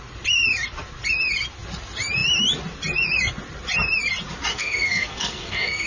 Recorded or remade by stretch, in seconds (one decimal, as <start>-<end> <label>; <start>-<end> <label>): 0.0-4.5 recorded; 4.5-5.9 remade